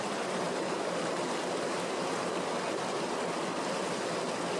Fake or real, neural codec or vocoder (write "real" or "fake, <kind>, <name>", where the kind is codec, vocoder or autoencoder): real